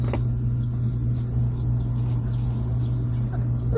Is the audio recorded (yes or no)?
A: yes